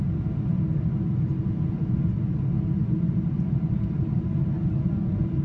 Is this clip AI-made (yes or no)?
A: no